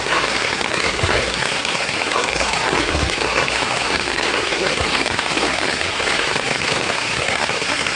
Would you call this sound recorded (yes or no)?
no